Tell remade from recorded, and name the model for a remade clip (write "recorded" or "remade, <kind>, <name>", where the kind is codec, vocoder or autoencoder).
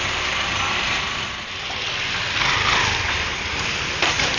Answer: recorded